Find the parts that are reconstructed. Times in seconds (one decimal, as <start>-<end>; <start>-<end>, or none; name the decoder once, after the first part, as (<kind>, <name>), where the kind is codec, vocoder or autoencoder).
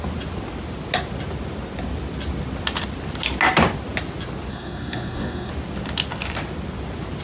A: 4.5-5.5 (codec, SNAC)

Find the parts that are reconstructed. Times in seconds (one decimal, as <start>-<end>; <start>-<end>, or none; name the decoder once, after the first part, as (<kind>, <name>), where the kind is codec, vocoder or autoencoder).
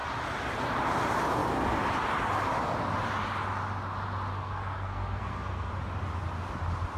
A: 4.3-5.7 (codec, SNAC)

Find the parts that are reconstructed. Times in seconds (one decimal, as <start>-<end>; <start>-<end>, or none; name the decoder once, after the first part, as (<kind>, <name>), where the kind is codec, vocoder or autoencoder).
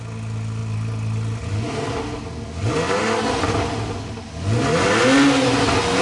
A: none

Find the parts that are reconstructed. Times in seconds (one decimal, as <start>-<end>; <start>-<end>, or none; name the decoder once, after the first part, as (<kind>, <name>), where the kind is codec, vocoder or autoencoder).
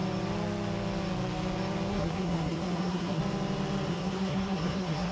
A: 1.9-3.2 (codec, SNAC); 3.9-5.1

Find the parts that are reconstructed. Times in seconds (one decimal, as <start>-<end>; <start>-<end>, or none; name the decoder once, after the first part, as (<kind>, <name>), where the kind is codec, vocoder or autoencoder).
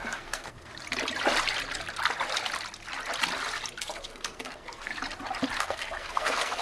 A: 0.0-0.7 (codec, SNAC); 3.8-4.9; 5.6-6.6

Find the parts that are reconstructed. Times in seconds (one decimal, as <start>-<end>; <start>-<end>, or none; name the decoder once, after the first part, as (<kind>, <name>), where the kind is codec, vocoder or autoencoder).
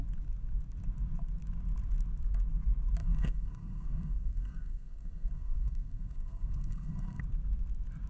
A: 3.0-7.2 (codec, SNAC)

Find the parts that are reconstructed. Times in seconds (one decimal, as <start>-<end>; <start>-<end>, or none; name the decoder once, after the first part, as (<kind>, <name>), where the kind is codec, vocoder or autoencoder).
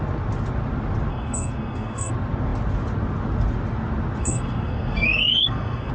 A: 1.1-2.1 (codec, SNAC); 4.2-5.9